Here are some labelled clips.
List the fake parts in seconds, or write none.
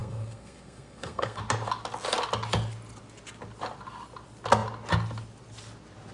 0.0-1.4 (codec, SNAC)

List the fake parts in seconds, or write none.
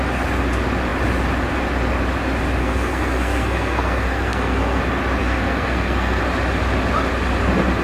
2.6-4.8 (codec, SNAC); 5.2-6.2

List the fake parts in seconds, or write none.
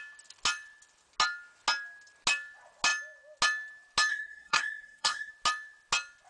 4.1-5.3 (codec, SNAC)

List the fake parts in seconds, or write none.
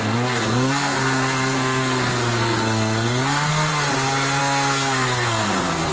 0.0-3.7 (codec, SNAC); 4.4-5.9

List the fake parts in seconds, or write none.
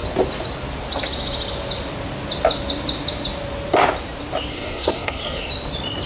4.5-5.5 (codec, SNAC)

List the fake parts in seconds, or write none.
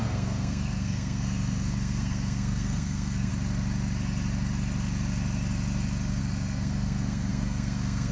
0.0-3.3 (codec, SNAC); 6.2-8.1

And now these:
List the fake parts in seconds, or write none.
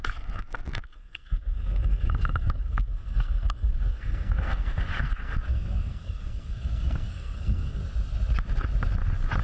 0.0-7.8 (codec, SNAC)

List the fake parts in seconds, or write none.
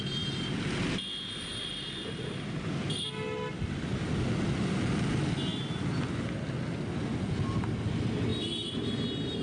none